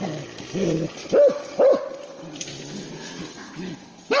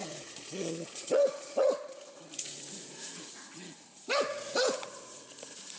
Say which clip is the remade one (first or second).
second